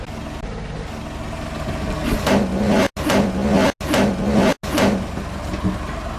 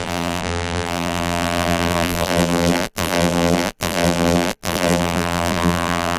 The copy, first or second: second